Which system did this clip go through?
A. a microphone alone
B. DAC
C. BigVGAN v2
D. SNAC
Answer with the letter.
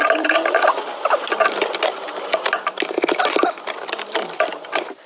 C